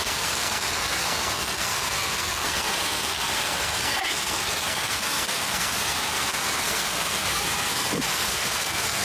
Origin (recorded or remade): remade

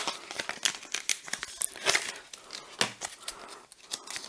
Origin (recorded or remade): recorded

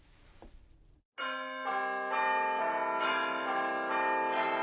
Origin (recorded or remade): recorded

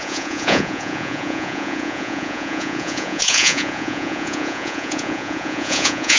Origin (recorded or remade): remade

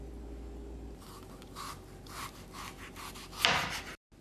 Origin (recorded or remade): recorded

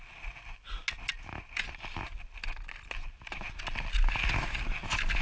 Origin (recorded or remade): recorded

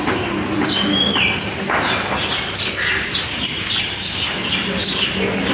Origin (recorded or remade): recorded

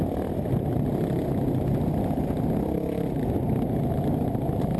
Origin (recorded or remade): recorded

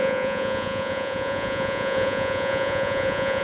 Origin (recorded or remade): remade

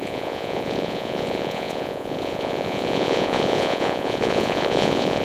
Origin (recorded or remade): remade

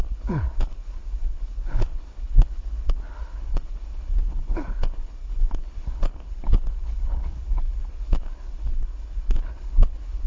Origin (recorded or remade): remade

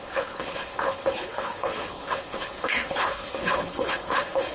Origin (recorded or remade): remade